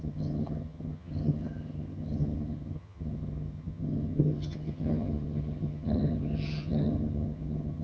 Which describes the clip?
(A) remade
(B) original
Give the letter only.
A